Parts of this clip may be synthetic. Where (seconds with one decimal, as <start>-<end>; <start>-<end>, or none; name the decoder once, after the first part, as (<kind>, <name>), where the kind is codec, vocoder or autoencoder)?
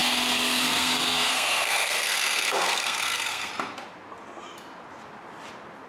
0.0-3.5 (codec, SNAC)